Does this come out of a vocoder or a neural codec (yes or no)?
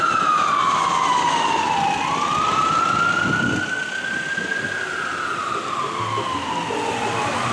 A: no